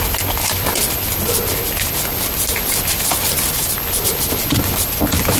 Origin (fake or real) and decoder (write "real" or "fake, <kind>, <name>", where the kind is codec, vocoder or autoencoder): real